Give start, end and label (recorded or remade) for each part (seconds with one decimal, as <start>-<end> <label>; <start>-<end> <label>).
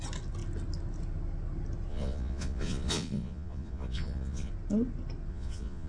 0.0-1.9 recorded; 1.9-4.5 remade; 4.5-5.3 recorded; 5.3-5.9 remade